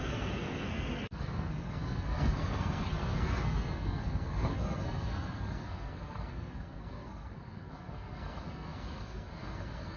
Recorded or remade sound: remade